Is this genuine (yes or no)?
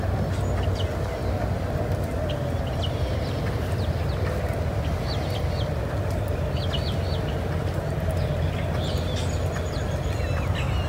yes